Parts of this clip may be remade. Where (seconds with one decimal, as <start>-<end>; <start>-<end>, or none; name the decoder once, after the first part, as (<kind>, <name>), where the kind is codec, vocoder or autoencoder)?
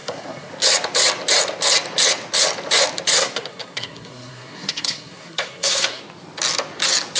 0.0-0.5 (codec, SNAC); 3.2-6.0